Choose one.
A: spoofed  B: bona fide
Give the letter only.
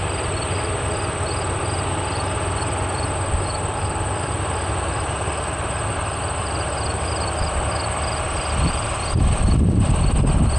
B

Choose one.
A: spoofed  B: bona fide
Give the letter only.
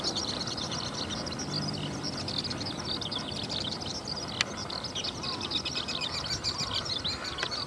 B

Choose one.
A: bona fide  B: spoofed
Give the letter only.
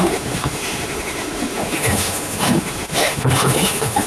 B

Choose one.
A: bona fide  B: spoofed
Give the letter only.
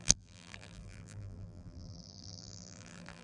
B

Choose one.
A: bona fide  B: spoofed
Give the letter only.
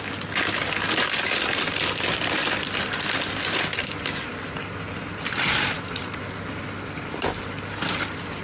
A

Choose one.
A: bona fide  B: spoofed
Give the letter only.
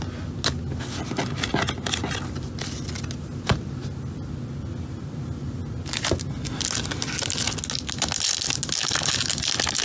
A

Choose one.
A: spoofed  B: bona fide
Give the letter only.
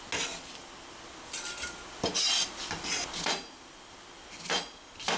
B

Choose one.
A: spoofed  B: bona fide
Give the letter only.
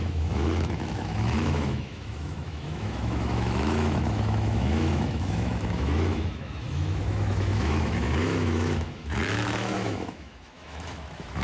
A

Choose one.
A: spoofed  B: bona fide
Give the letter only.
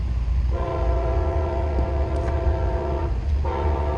A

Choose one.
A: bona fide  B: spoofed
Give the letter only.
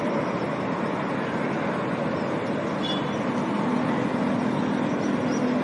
A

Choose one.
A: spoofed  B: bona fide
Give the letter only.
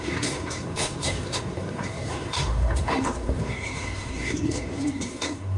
A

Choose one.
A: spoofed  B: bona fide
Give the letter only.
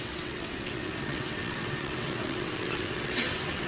A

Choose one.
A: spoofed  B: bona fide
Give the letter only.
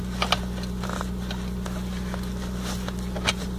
B